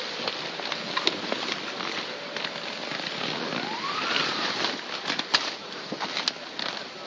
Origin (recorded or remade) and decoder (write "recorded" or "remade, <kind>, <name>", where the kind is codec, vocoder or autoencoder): recorded